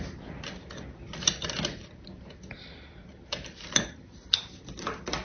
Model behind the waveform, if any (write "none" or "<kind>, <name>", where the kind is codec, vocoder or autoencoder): none